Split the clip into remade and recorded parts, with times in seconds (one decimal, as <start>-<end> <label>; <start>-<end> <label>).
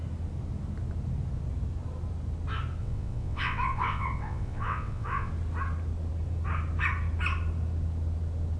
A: 0.0-2.8 recorded; 2.8-5.3 remade; 5.3-8.6 recorded